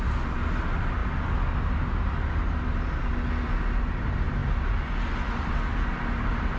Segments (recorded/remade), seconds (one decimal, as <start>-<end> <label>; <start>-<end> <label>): 0.0-6.6 recorded